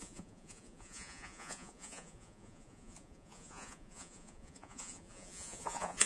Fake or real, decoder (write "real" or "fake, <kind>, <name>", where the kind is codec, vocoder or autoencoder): fake, vocoder, Vocos